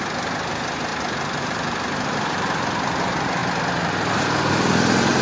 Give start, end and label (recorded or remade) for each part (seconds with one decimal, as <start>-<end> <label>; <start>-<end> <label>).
0.0-0.9 remade; 0.9-1.4 recorded; 1.4-3.4 remade; 3.4-4.5 recorded; 4.5-5.2 remade